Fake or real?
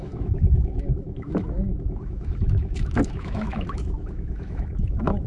fake